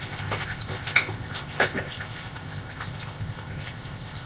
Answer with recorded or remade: remade